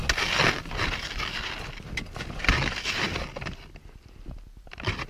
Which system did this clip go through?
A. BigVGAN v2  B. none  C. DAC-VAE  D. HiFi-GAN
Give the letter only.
B